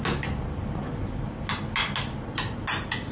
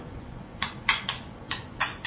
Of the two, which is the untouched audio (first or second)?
first